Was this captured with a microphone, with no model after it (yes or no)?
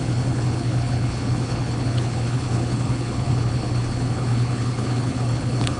no